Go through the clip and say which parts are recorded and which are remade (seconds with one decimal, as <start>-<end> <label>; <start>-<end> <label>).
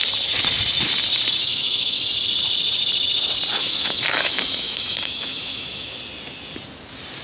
0.0-1.5 recorded; 1.5-2.0 remade; 2.0-3.6 recorded; 3.6-6.0 remade; 6.0-7.2 recorded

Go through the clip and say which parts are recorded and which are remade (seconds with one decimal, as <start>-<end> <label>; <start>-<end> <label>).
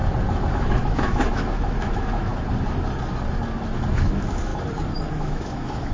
0.0-0.5 recorded; 0.5-2.3 remade; 2.3-3.9 recorded; 3.9-4.5 remade; 4.5-5.0 recorded; 5.0-5.9 remade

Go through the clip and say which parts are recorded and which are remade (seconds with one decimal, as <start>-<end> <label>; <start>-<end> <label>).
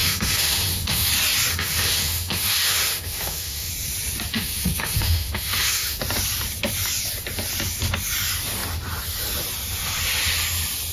0.0-1.1 remade; 1.1-1.5 recorded; 1.5-3.7 remade; 3.7-4.3 recorded; 4.3-6.0 remade; 6.0-10.9 recorded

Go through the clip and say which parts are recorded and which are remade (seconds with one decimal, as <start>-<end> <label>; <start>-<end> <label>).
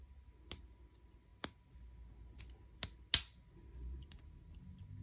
0.0-5.0 recorded